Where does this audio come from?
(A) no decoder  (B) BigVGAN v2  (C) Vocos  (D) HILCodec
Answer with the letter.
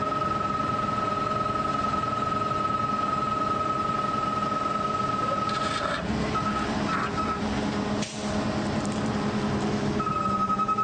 B